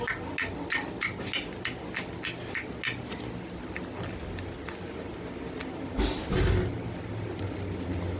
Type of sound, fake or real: real